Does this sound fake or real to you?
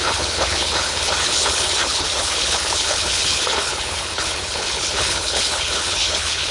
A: fake